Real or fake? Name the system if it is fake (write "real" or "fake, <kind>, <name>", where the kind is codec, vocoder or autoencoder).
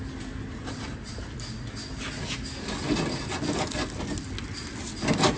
real